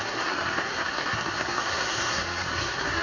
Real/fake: fake